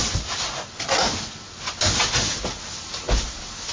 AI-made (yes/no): no